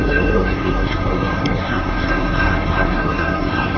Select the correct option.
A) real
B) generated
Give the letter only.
B